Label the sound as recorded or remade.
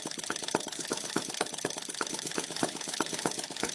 remade